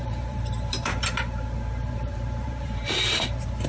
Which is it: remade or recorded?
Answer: remade